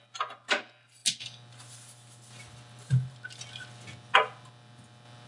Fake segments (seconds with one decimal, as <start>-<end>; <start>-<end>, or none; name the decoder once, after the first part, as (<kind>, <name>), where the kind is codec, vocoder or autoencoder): none